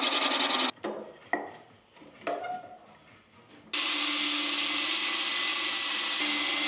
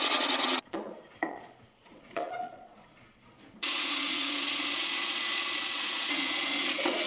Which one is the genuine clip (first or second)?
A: first